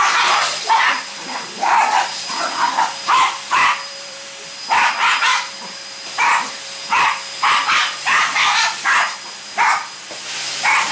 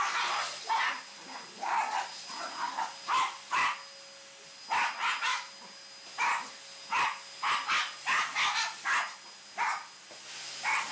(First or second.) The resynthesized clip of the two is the first